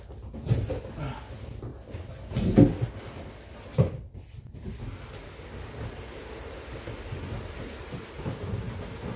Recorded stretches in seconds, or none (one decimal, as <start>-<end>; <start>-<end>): 0.0-9.2